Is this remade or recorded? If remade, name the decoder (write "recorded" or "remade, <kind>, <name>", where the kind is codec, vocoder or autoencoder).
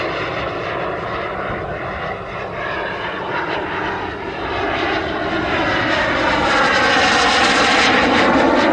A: recorded